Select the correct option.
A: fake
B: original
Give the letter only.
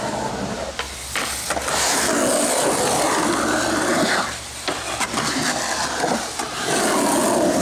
B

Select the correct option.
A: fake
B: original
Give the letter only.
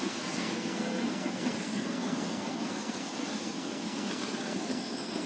A